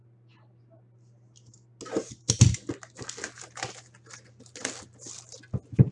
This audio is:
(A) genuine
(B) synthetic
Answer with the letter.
A